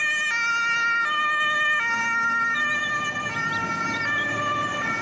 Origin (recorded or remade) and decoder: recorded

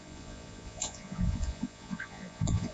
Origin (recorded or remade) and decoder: remade, vocoder, Vocos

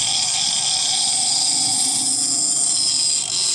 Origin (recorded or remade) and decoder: recorded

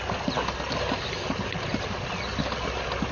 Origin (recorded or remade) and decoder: recorded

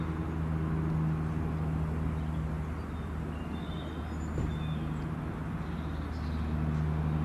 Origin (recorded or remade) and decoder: recorded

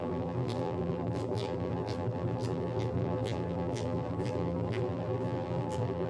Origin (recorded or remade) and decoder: remade, vocoder, BigVGAN v2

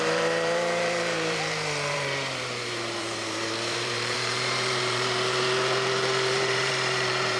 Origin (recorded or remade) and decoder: remade, vocoder, BigVGAN v2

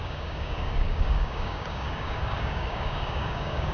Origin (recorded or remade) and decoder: remade, codec, DAC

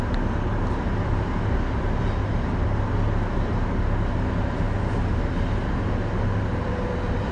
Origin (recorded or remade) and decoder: recorded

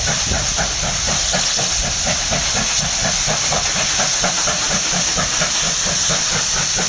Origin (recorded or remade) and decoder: recorded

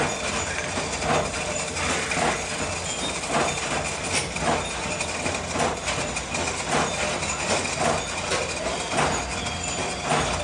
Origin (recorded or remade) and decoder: recorded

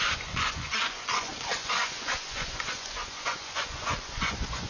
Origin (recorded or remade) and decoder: remade, vocoder, Vocos